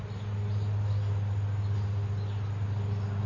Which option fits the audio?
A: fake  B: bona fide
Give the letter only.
B